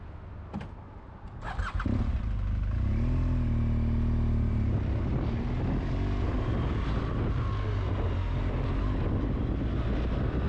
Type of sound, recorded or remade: recorded